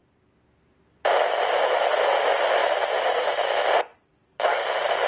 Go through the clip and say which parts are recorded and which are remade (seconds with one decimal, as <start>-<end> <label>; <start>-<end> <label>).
0.0-2.6 recorded; 2.6-3.5 remade; 3.5-3.9 recorded; 3.9-5.1 remade